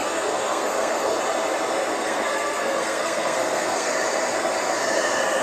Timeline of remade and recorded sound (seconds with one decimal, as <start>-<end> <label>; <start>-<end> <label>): 0.0-1.2 remade; 1.2-1.9 recorded; 1.9-3.9 remade; 3.9-5.4 recorded